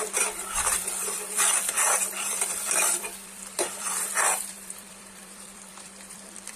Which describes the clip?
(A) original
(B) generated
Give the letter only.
B